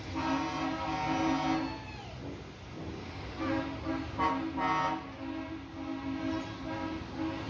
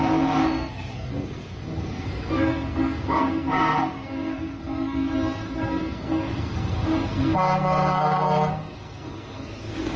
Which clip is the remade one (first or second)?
second